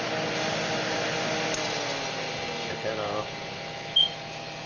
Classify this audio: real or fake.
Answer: real